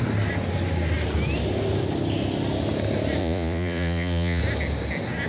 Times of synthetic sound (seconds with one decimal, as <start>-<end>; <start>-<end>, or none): 3.2-4.4